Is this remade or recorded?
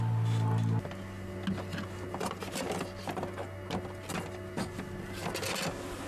recorded